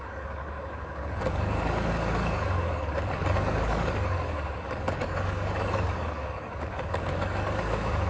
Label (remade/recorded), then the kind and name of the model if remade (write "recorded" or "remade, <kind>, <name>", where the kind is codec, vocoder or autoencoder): remade, codec, DAC